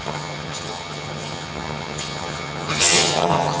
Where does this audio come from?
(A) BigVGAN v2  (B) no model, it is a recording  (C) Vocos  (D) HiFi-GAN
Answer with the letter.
D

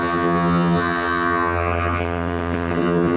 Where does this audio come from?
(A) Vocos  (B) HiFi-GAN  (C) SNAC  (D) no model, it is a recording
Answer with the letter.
B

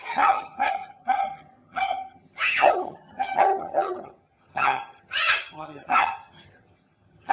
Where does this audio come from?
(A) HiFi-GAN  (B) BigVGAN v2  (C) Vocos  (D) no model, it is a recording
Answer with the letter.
A